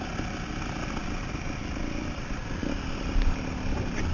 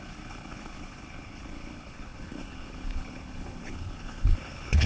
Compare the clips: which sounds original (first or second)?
first